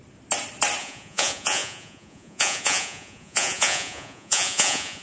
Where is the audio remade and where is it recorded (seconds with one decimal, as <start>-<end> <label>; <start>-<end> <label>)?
0.0-0.8 recorded; 0.8-5.0 remade